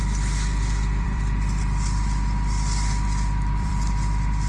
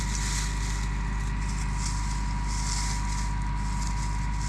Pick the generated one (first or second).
first